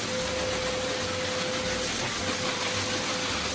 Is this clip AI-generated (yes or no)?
no